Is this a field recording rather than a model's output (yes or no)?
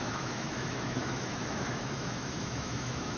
no